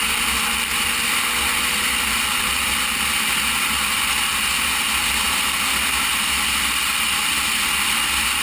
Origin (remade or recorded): recorded